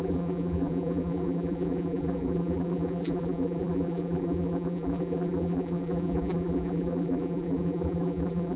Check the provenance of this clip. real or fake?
fake